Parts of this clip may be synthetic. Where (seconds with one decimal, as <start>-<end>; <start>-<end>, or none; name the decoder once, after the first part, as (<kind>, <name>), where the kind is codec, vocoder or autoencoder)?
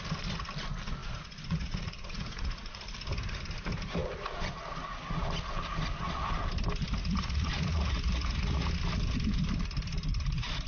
1.0-2.8 (vocoder, Vocos); 7.0-8.7